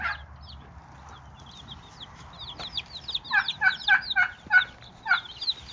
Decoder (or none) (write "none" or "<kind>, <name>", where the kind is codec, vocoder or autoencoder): none